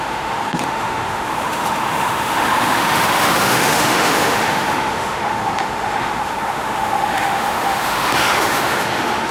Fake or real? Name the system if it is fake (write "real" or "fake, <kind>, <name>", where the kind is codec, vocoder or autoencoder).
fake, autoencoder, DAC-VAE